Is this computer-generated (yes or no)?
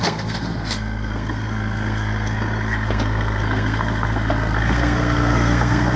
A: yes